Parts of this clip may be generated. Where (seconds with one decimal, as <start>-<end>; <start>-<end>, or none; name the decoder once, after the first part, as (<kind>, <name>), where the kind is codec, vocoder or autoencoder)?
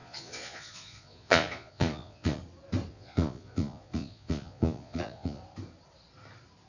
0.0-2.4 (vocoder, Vocos); 2.9-5.4